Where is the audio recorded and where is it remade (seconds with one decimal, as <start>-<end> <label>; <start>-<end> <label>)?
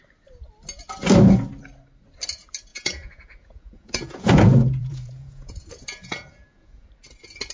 0.0-2.7 recorded; 2.7-6.9 remade; 6.9-7.5 recorded